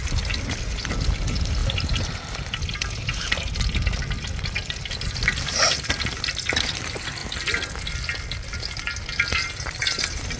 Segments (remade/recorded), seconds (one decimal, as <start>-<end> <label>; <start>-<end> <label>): 0.0-1.6 recorded; 1.6-6.3 remade; 6.3-7.2 recorded; 7.2-7.8 remade; 7.8-9.8 recorded; 9.8-10.4 remade